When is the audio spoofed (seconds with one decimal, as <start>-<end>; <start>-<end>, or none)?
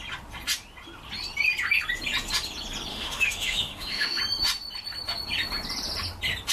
2.9-4.2